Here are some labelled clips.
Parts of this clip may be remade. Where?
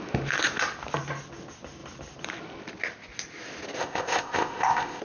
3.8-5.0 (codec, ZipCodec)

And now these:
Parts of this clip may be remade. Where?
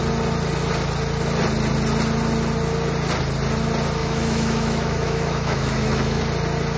4.0-6.2 (autoencoder, DAC-VAE)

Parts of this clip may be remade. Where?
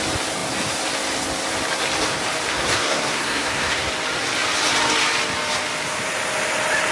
2.5-3.9 (codec, SNAC)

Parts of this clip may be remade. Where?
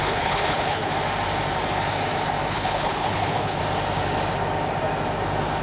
0.0-0.9 (codec, HILCodec); 2.5-3.6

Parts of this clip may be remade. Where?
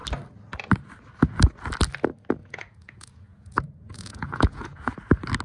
2.4-4.9 (vocoder, Vocos)